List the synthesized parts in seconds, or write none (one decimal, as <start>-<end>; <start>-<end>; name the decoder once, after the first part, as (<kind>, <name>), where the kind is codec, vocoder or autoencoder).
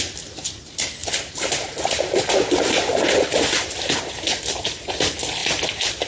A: none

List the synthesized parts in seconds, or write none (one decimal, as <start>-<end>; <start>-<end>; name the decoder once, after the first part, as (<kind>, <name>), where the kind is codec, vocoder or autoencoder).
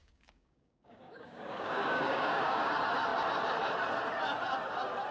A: 0.0-2.7 (codec, DAC)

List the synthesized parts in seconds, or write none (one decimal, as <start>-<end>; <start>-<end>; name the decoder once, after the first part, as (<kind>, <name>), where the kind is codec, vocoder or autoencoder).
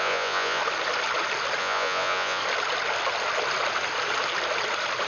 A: 0.0-0.6 (vocoder, Vocos); 1.6-2.4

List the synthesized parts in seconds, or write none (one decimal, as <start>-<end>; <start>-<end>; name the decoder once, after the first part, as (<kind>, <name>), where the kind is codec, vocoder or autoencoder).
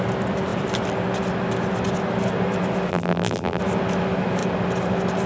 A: 2.9-3.6 (vocoder, BigVGAN v2)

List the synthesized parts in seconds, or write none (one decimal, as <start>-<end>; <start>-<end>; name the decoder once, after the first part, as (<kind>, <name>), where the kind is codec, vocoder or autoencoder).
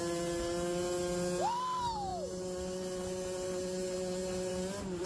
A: none